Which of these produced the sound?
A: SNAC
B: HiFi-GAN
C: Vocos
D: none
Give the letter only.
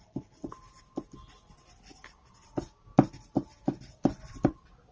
D